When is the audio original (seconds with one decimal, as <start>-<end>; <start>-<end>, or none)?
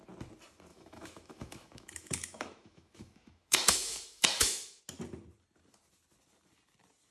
0.0-0.7; 4.8-7.1